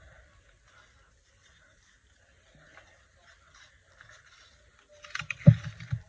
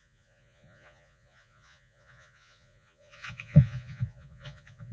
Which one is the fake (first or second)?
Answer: second